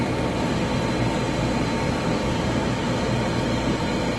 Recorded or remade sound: recorded